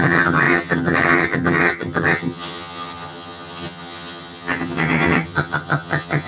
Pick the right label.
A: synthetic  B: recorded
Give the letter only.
A